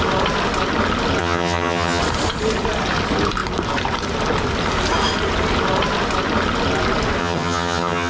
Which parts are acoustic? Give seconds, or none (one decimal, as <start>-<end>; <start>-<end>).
0.0-1.2; 2.0-7.2

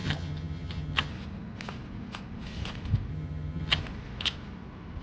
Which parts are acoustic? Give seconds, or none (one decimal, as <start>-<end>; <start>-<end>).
1.1-3.1; 3.8-5.0

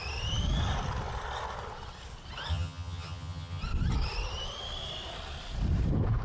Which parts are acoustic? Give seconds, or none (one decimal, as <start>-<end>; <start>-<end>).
0.0-2.5; 3.6-6.2

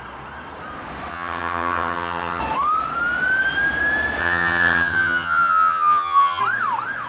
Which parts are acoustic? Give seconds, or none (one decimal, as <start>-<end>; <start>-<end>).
0.0-1.1; 2.4-4.2; 6.4-7.1